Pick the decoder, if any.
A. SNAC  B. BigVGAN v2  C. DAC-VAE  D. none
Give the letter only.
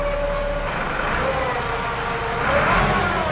D